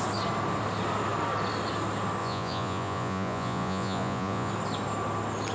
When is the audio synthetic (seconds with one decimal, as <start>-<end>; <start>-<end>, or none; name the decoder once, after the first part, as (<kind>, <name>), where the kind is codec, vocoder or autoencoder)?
2.2-4.5 (vocoder, Vocos)